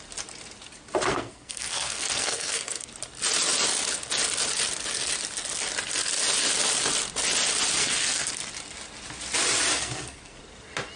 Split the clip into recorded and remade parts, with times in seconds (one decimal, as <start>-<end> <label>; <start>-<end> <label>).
0.0-1.1 recorded; 1.1-2.9 remade; 2.9-7.8 recorded; 7.8-8.3 remade; 8.3-9.7 recorded; 9.7-10.4 remade; 10.4-11.0 recorded